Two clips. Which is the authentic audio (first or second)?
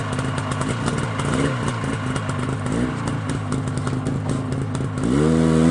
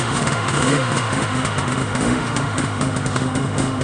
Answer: first